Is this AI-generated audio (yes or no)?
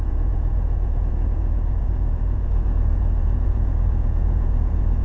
yes